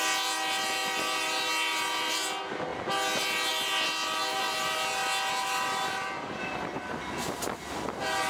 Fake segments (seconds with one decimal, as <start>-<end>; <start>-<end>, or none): none